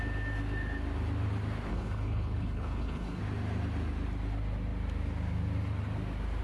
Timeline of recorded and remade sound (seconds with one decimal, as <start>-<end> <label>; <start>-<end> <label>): 0.0-1.7 recorded; 1.7-3.2 remade; 3.2-6.4 recorded